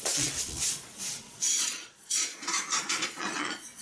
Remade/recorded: remade